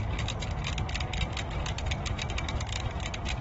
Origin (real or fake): real